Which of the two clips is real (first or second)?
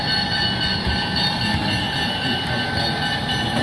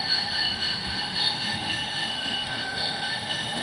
first